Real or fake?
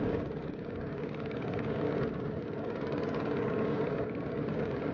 fake